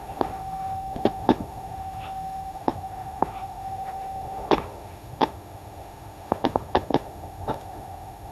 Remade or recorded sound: remade